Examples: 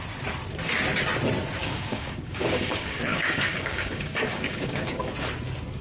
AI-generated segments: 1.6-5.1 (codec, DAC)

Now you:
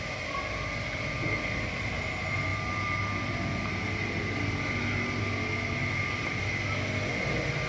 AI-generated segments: 5.8-6.4 (vocoder, BigVGAN v2)

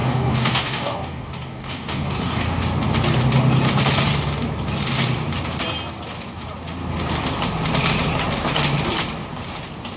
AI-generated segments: 0.0-2.6 (codec, DAC)

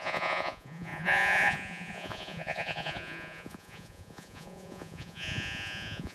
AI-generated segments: 0.0-6.1 (vocoder, Vocos)

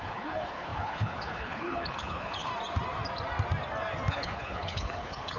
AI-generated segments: 0.0-2.5 (codec, HILCodec); 4.1-5.4

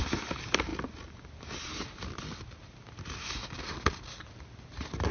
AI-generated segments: none